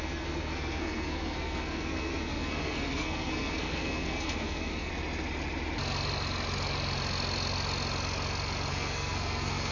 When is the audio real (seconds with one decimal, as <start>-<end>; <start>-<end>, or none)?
4.9-8.7